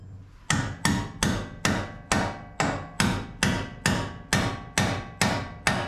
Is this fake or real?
real